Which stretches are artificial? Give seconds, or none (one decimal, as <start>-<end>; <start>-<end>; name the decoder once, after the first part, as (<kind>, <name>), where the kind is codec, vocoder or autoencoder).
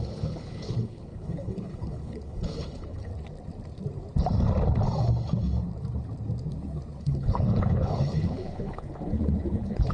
0.0-3.1 (codec, HILCodec); 7.0-9.9